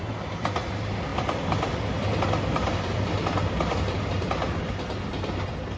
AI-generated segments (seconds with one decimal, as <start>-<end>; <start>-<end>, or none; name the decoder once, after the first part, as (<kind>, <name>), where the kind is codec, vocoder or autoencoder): 1.1-4.6 (vocoder, BigVGAN v2)